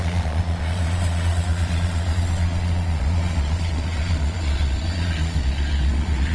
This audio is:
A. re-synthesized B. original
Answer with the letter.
A